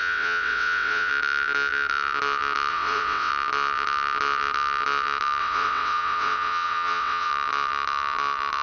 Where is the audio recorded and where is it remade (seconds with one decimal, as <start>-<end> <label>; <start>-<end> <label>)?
0.0-1.1 remade; 1.1-2.7 recorded; 2.7-3.3 remade; 3.3-5.4 recorded; 5.4-7.3 remade; 7.3-8.6 recorded